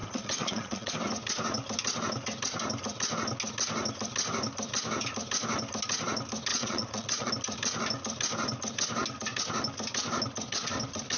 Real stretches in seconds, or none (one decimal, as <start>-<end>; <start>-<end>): 0.9-6.5; 7.3-11.2